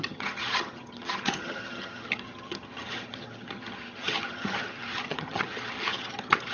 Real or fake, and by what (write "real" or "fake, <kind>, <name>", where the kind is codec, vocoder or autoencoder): fake, vocoder, HiFi-GAN